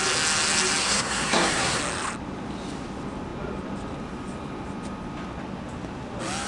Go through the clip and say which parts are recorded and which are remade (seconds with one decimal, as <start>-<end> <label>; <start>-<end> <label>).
0.0-0.8 recorded; 0.8-1.8 remade; 1.8-6.5 recorded